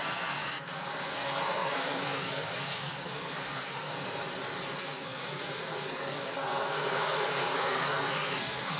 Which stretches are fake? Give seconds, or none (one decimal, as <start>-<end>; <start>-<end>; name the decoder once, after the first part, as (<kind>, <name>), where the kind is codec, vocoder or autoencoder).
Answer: 0.0-4.2 (codec, SNAC); 4.8-8.8